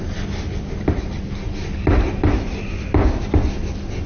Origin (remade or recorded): recorded